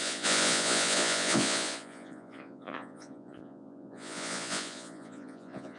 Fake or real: fake